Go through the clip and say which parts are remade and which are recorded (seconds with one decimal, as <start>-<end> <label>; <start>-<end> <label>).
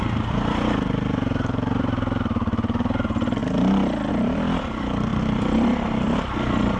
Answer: 0.0-3.4 remade; 3.4-4.1 recorded; 4.1-6.8 remade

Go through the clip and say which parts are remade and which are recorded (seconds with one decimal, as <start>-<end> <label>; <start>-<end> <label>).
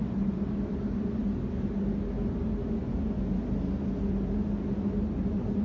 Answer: 0.0-5.6 recorded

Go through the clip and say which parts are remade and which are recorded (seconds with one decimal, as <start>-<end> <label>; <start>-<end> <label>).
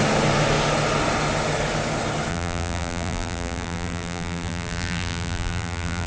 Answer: 0.0-2.3 recorded; 2.3-6.1 remade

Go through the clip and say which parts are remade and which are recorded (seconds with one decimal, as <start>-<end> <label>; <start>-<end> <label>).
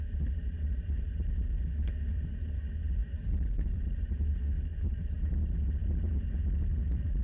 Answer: 0.0-3.0 recorded; 3.0-4.3 remade; 4.3-4.7 recorded; 4.7-5.3 remade; 5.3-7.2 recorded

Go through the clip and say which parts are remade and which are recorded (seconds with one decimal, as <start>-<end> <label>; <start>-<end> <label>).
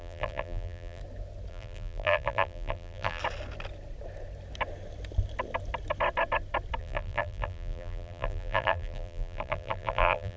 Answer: 0.0-1.0 remade; 1.0-1.5 recorded; 1.5-3.2 remade; 3.2-6.8 recorded; 6.8-10.4 remade